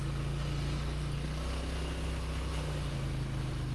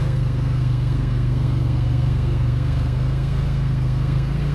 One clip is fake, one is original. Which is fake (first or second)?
second